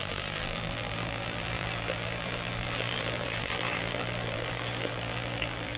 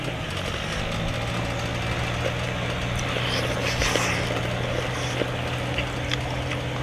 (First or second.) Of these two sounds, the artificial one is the first